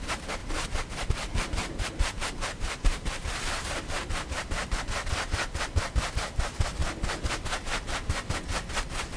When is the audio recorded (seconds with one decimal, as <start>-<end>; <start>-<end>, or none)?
0.0-0.4; 4.8-9.2